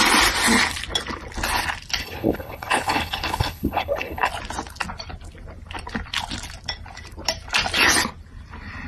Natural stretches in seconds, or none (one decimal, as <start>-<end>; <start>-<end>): 0.0-2.0; 4.3-8.9